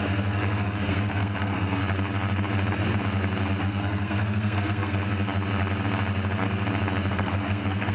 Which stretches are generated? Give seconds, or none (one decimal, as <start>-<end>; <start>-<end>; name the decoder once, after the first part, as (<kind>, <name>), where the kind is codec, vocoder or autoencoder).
0.0-1.8 (codec, SNAC); 3.6-5.0; 7.1-7.9